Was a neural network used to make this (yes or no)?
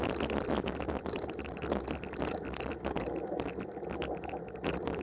no